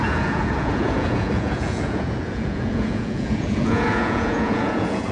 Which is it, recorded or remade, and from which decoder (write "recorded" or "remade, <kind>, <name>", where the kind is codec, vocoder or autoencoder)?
remade, vocoder, Vocos